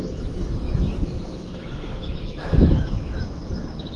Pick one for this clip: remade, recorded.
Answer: remade